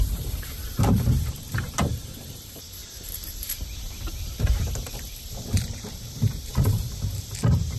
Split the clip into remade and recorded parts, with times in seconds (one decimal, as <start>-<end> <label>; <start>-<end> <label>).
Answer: 0.0-7.8 remade